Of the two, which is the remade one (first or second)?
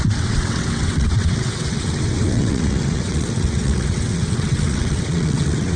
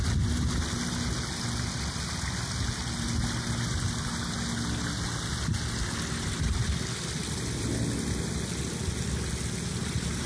first